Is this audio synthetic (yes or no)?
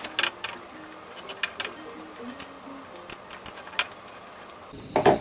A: no